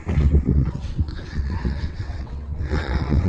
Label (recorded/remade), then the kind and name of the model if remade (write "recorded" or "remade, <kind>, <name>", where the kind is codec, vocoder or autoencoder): remade, vocoder, WaveNeXt